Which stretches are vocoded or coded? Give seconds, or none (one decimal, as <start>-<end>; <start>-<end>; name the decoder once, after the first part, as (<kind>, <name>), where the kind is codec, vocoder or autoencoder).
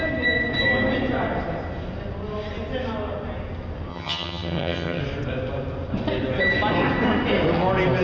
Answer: 3.9-5.0 (vocoder, HiFi-GAN)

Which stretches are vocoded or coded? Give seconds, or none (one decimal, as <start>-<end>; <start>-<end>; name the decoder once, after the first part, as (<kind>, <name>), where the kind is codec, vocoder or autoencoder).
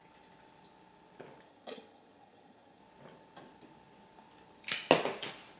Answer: 1.5-2.8 (vocoder, HiFi-GAN)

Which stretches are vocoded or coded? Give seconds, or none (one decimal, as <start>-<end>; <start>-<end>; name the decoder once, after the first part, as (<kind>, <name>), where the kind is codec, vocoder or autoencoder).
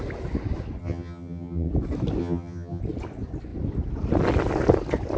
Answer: 0.8-1.7 (vocoder, HiFi-GAN); 2.2-2.8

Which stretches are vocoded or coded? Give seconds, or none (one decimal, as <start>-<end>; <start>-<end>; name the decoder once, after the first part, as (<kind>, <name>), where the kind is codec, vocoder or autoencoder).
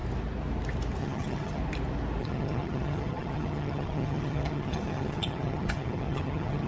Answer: 1.0-1.6 (vocoder, HiFi-GAN); 2.2-6.7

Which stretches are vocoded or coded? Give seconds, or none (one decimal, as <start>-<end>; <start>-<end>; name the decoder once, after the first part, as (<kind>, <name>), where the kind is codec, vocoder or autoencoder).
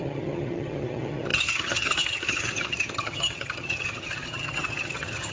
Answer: 0.0-5.3 (vocoder, HiFi-GAN)